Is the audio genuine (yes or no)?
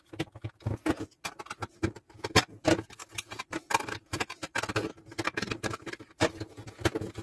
yes